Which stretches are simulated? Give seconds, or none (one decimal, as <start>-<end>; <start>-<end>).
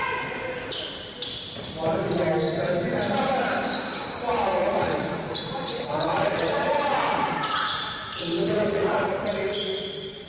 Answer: 4.6-8.2; 8.7-9.3